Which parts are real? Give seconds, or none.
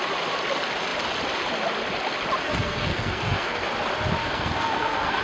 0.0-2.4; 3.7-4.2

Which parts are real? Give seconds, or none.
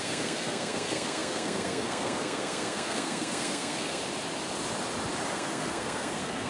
4.0-5.3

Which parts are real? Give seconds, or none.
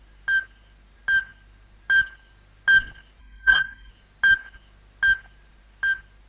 0.0-3.2; 3.9-6.3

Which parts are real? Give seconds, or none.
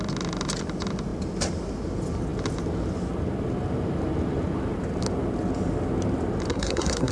0.0-6.5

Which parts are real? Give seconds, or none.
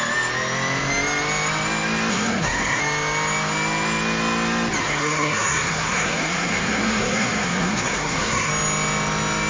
0.0-2.1; 2.8-4.8; 8.5-9.5